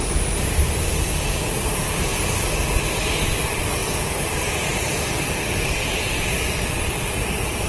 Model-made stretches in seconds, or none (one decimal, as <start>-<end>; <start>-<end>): 0.0-2.1; 2.9-7.7